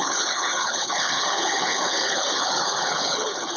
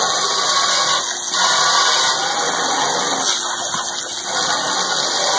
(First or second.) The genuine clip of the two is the second